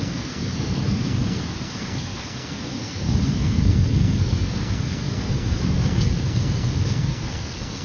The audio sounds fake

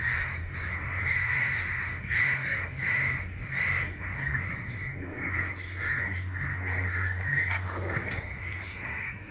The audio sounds fake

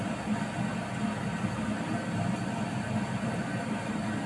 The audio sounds real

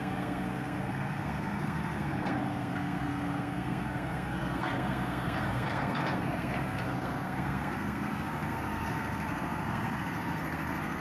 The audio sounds fake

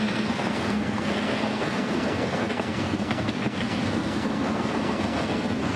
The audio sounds fake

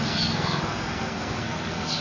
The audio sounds fake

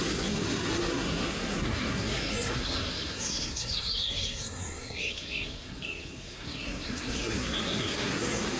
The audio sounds fake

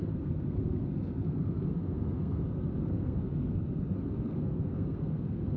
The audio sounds fake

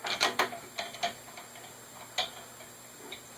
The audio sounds real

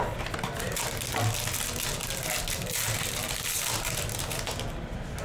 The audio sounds real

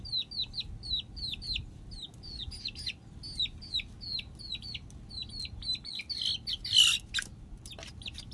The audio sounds real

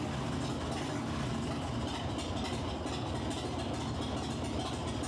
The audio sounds real